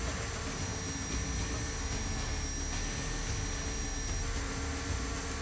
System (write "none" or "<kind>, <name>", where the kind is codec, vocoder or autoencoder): none